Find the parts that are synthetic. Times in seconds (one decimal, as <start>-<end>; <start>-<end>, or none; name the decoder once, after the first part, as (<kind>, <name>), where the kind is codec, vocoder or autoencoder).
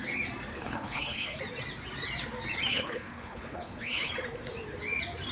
0.5-1.4 (codec, HILCodec); 2.7-4.1